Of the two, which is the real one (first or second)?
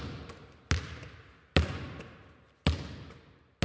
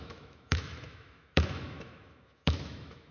first